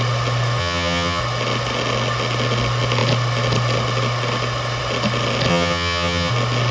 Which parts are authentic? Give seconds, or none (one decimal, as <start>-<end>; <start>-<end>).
0.0-0.6; 1.2-5.5; 6.3-6.7